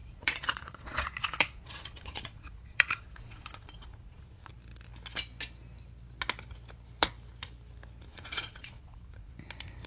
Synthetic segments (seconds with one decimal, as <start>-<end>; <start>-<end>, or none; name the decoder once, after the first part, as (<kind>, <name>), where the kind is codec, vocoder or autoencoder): 0.0-4.5 (vocoder, Vocos); 8.1-9.3